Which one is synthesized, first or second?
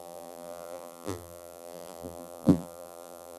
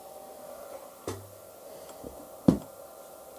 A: first